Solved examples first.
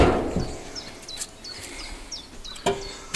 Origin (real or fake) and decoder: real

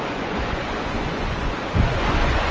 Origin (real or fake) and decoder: fake, vocoder, Vocos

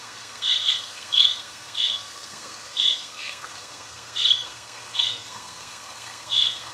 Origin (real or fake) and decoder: fake, codec, SNAC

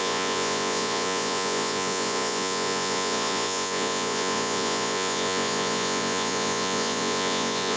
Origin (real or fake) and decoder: fake, vocoder, Vocos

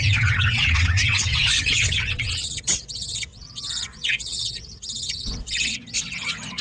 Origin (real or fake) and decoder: fake, vocoder, WaveNeXt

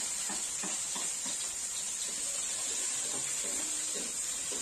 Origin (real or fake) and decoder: real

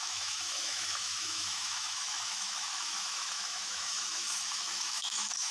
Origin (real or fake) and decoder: fake, autoencoder, DAC-VAE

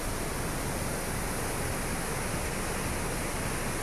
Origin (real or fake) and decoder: real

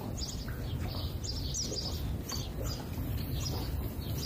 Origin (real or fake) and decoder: real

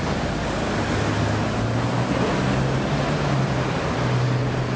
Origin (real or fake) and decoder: real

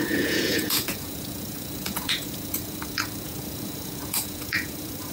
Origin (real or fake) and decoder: fake, vocoder, Vocos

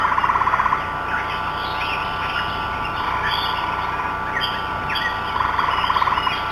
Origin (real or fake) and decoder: real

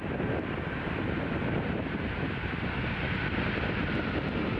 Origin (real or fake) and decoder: real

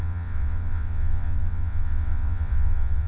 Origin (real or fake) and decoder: fake, vocoder, WaveNeXt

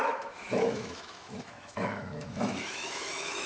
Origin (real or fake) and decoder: fake, autoencoder, DAC-VAE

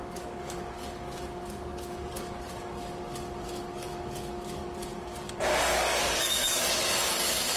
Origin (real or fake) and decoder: fake, codec, DAC